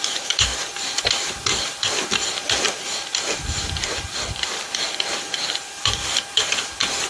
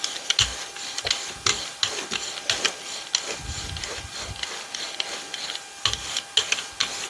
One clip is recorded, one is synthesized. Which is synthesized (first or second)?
first